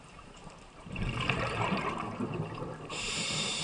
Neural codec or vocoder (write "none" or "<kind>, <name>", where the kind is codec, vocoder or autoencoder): vocoder, BigVGAN v2